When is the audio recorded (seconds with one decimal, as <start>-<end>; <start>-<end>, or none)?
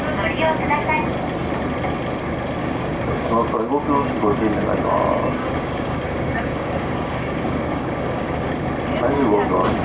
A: 0.0-2.6; 3.4-5.4; 8.5-9.8